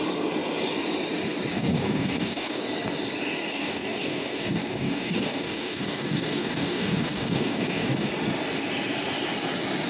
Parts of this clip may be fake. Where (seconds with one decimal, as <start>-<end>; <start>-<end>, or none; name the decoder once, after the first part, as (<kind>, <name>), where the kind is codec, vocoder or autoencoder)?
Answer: 1.5-2.6 (codec, DAC); 3.5-8.1

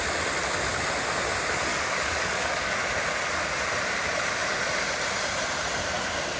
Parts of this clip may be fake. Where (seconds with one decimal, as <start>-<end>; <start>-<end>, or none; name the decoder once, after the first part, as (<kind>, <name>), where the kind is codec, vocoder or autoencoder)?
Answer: 1.7-2.8 (codec, DAC)